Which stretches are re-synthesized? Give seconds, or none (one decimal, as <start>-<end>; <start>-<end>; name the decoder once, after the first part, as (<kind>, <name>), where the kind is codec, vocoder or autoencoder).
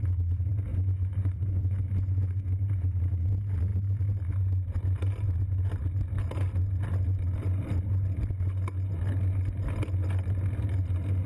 0.7-2.5 (vocoder, Vocos)